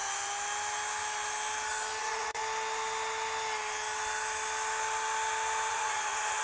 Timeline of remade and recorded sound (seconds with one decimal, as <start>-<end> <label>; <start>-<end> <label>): 0.0-2.0 recorded; 2.0-2.4 remade; 2.4-5.7 recorded; 5.7-6.4 remade